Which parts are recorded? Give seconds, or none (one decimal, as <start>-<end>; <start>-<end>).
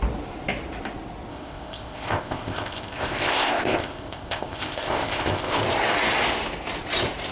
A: 0.0-1.3; 5.6-7.3